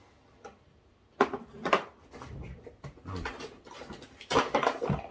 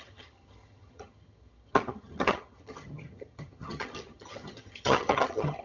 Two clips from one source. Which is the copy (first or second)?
second